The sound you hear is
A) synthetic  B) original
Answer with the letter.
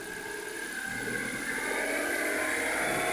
B